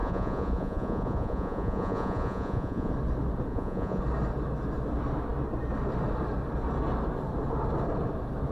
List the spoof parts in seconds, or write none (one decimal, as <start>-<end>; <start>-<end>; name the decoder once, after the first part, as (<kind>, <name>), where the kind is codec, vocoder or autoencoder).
0.0-2.9 (vocoder, Vocos); 3.5-4.0